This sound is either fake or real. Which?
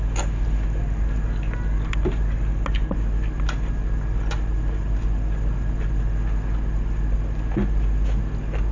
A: real